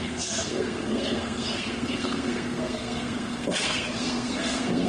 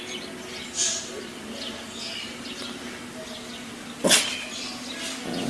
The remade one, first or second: first